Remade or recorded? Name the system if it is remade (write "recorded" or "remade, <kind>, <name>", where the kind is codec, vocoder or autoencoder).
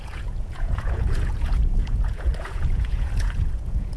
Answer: remade, vocoder, Vocos